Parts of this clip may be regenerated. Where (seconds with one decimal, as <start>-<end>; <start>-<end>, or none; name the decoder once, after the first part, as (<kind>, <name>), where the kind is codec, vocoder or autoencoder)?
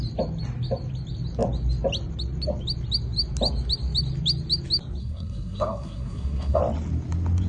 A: 5.0-6.6 (codec, SNAC)